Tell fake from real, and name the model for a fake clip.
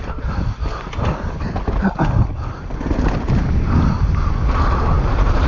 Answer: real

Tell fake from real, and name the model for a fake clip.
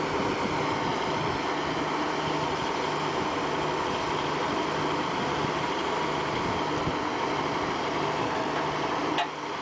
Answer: real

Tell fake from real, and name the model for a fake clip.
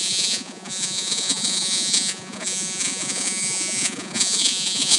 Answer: fake, vocoder, Vocos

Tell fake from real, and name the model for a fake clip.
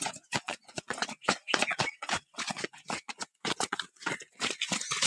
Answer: fake, vocoder, Vocos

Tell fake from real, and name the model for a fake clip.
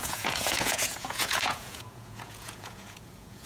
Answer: fake, vocoder, Vocos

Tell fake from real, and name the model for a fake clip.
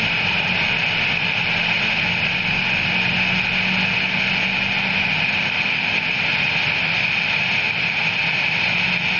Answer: real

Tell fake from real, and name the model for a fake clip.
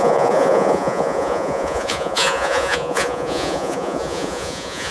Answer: fake, vocoder, Vocos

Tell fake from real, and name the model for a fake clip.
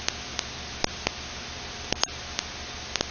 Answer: real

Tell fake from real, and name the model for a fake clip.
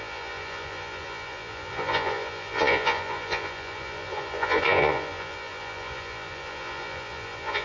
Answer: fake, vocoder, Vocos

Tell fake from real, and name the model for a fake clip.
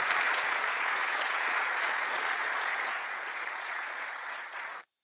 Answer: fake, vocoder, Vocos